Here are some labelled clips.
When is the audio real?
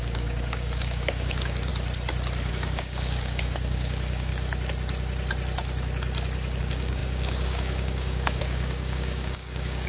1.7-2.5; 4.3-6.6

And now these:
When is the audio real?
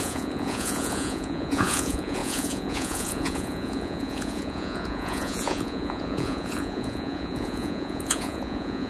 none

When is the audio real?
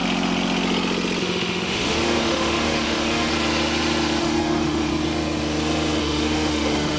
0.0-1.2; 3.3-4.2; 4.9-6.0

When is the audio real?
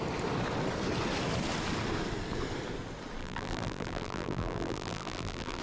0.0-3.2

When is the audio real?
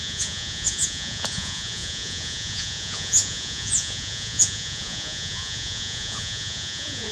none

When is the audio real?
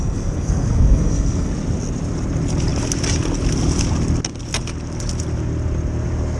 1.5-6.4